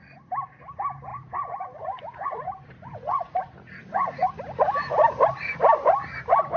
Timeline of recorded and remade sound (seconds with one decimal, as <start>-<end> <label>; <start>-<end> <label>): 0.0-1.1 recorded; 1.1-4.3 remade; 4.3-6.6 recorded